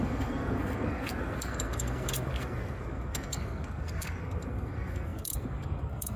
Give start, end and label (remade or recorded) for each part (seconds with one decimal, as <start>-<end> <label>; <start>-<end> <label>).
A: 0.0-6.2 remade